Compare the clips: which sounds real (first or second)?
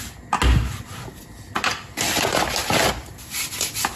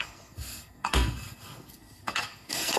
first